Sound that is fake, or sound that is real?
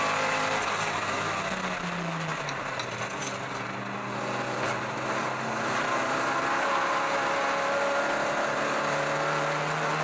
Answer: real